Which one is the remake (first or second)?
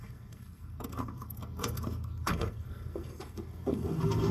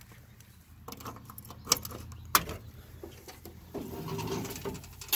first